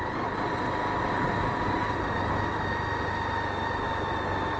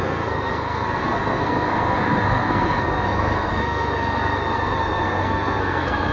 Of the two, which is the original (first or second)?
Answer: first